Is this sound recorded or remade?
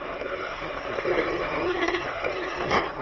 remade